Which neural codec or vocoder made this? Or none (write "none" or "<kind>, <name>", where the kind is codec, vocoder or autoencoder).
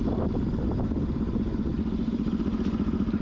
none